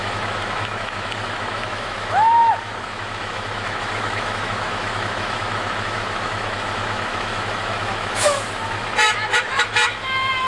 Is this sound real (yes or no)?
no